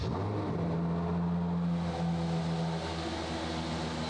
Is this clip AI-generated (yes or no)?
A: no